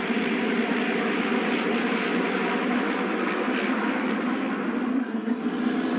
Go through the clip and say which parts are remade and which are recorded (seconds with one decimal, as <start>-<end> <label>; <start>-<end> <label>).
0.0-4.9 recorded; 4.9-5.4 remade; 5.4-6.0 recorded